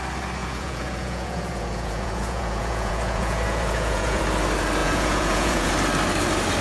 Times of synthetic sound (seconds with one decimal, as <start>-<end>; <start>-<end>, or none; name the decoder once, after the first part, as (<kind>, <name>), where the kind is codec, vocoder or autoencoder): 0.4-4.2 (vocoder, Vocos); 4.8-5.7